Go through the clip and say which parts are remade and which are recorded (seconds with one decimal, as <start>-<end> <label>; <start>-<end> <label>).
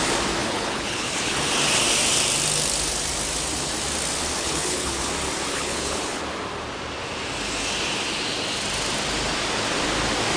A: 0.0-0.4 recorded; 0.4-1.4 remade; 1.4-4.4 recorded; 4.4-5.1 remade; 5.1-5.5 recorded; 5.5-6.2 remade; 6.2-10.4 recorded